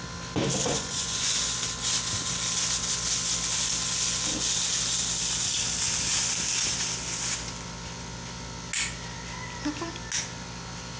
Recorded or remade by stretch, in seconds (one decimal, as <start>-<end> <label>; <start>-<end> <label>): 0.0-0.6 recorded; 0.6-1.3 remade; 1.3-11.0 recorded

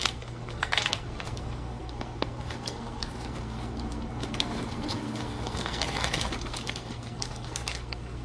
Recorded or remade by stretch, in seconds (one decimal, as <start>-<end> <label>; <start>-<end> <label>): 0.0-8.2 remade